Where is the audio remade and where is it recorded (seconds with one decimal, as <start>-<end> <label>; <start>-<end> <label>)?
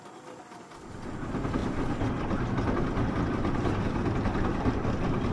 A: 0.0-5.3 recorded